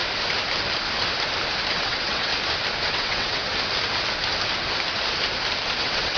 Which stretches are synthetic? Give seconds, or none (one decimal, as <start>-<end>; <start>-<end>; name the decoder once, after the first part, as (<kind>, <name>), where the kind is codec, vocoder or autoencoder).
1.7-2.3 (vocoder, WaveNeXt); 2.9-3.4; 5.8-6.2